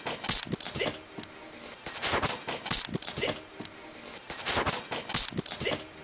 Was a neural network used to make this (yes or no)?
no